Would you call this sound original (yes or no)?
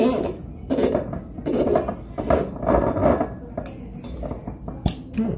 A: yes